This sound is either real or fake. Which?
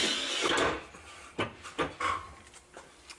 real